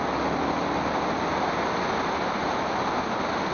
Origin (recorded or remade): recorded